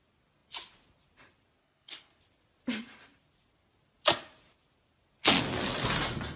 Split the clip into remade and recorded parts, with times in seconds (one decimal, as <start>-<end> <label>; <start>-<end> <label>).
0.0-1.6 recorded; 1.6-2.2 remade; 2.2-6.4 recorded